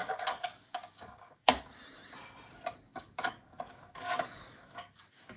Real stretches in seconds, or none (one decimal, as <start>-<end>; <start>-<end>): 1.6-2.9